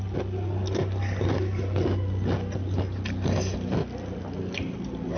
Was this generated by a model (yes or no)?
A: no